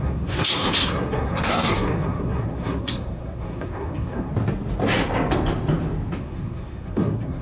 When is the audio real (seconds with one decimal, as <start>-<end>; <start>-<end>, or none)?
4.3-6.2